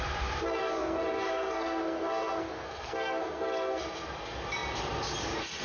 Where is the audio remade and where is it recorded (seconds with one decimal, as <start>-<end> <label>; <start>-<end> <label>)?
0.0-0.6 recorded; 0.6-3.8 remade; 3.8-5.6 recorded